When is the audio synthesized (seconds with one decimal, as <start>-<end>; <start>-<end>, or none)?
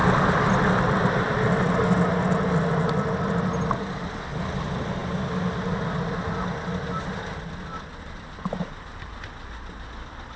none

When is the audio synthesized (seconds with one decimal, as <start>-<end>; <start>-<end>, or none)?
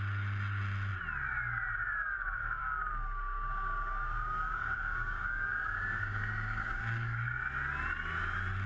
2.6-7.4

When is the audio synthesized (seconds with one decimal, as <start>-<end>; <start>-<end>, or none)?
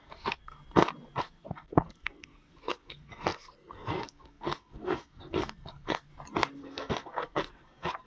0.0-0.5; 1.2-6.1; 6.6-8.1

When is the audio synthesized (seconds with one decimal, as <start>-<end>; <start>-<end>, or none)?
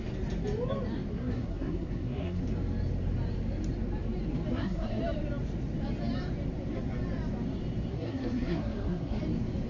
1.1-2.4; 4.5-5.0; 7.9-9.2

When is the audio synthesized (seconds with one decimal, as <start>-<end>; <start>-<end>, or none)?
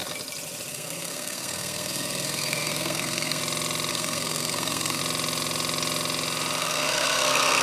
0.7-3.4; 3.9-5.0; 6.6-7.6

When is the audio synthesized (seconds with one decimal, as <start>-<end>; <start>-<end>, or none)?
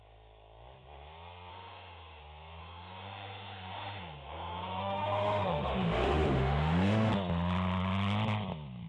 1.5-2.2; 2.6-7.1